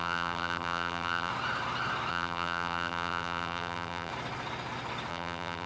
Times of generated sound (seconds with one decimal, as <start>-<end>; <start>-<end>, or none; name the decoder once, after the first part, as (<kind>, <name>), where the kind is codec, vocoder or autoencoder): 0.0-1.3 (vocoder, BigVGAN v2); 2.1-4.1; 5.1-5.7